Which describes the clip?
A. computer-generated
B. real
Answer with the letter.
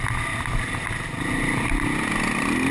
B